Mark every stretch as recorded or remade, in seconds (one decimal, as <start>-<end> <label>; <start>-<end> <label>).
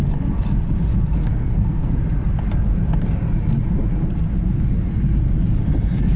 0.0-1.2 recorded; 1.2-1.9 remade; 1.9-6.2 recorded